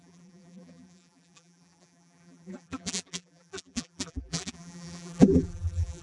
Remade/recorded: remade